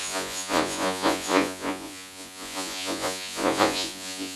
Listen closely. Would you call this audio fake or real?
fake